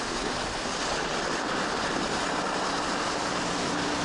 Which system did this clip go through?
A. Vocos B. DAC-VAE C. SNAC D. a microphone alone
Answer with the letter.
D